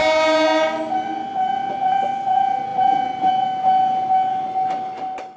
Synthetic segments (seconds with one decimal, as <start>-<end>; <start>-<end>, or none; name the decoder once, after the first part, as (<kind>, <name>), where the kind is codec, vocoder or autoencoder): none